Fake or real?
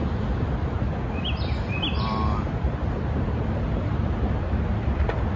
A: fake